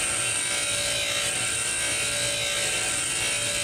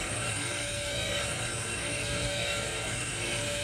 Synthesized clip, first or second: second